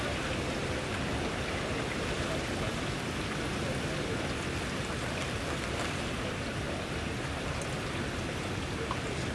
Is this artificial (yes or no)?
no